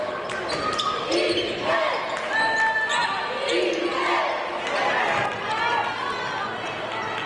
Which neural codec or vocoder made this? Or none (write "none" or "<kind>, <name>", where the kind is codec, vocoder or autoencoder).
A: none